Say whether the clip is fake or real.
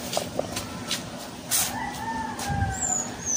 real